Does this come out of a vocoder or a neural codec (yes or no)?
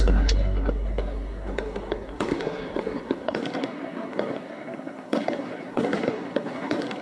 yes